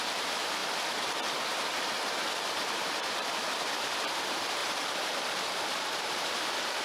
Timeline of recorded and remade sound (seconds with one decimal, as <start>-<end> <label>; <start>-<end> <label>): 0.0-0.6 remade; 0.6-2.1 recorded; 2.1-6.8 remade